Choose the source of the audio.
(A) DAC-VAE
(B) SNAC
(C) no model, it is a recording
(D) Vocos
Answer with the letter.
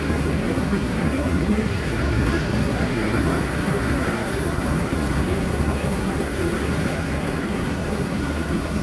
B